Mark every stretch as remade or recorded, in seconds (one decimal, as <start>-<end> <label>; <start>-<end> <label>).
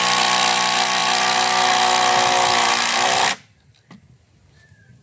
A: 0.0-5.0 recorded